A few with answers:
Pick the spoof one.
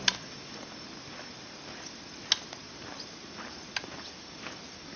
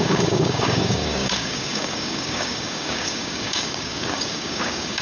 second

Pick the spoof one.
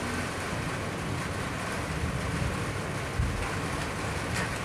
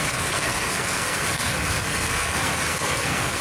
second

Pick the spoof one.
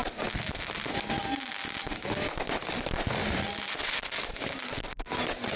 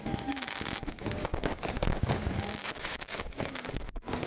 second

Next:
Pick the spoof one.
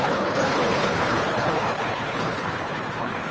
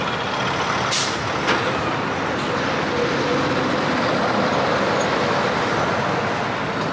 first